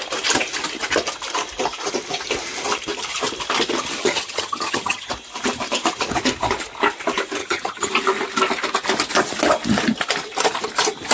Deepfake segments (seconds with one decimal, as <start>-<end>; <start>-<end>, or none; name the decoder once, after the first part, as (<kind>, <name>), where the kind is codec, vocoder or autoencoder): 4.0-5.1 (vocoder, HiFi-GAN); 7.4-7.9